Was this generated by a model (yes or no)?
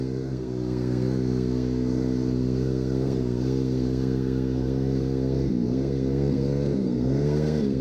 yes